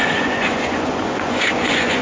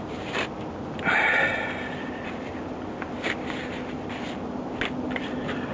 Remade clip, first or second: first